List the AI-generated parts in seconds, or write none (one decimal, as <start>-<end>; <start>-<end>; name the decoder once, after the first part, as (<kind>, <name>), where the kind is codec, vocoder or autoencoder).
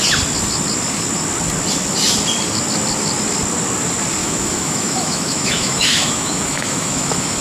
4.2-7.4 (autoencoder, DAC-VAE)